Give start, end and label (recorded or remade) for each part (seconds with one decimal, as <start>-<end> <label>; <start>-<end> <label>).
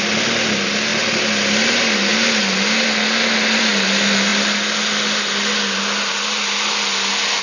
0.0-7.4 recorded